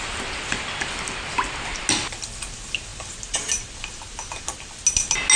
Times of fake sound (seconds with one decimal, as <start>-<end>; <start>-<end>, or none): none